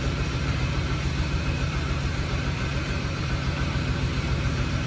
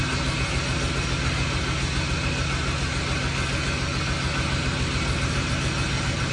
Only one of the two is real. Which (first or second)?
second